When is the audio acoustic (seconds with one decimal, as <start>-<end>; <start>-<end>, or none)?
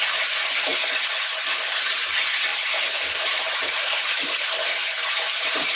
2.5-3.1